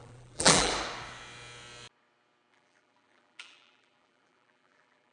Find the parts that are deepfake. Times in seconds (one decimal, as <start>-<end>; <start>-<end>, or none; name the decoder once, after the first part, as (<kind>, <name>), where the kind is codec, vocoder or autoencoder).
0.0-0.7 (vocoder, BigVGAN v2); 2.5-5.1